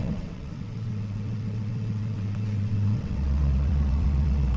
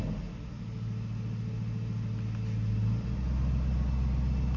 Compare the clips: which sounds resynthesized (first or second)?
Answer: first